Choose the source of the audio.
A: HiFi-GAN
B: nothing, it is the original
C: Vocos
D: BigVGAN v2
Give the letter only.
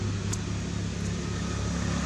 B